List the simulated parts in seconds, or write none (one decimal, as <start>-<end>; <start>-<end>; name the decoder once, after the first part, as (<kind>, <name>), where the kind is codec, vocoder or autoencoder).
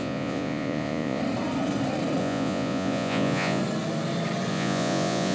0.0-1.2 (vocoder, Vocos); 2.2-3.6; 4.5-5.3